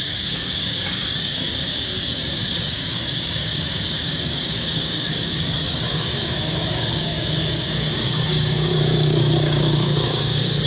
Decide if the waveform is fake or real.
fake